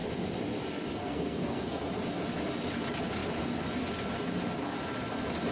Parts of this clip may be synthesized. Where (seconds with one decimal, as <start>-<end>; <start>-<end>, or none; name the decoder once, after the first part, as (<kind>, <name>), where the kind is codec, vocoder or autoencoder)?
1.0-1.8 (codec, SNAC)